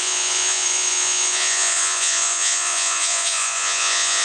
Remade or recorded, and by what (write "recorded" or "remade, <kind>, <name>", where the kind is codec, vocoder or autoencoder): remade, vocoder, Vocos